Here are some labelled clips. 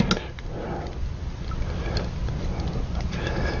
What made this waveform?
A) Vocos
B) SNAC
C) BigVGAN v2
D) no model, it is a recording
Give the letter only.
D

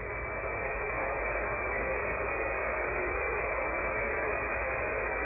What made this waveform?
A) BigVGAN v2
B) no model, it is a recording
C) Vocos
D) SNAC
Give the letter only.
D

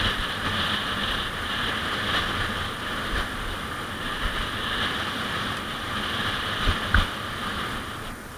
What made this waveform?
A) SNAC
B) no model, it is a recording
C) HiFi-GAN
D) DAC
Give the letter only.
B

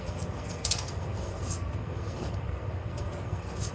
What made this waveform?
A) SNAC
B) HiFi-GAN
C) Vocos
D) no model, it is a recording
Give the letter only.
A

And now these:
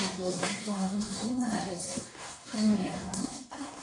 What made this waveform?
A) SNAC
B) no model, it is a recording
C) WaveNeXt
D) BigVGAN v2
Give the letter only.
A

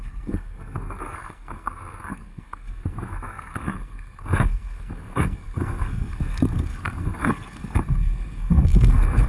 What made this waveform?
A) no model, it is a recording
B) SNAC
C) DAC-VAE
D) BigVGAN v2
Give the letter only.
B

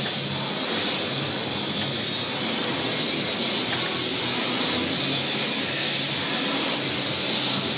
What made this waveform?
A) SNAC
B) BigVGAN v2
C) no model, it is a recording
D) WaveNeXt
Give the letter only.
C